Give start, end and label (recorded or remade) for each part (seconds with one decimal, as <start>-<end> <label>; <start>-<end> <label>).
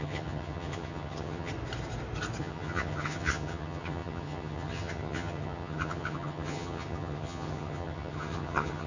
0.0-1.5 remade; 1.5-2.4 recorded; 2.4-8.9 remade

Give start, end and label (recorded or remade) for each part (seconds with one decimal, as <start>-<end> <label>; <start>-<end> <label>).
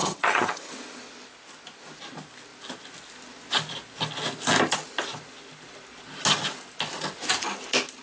0.0-0.7 remade; 0.7-8.0 recorded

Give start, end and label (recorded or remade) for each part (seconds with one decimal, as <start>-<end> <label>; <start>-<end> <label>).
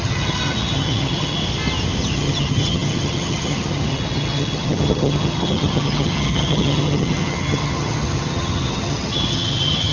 0.0-1.4 remade; 1.4-2.0 recorded; 2.0-9.9 remade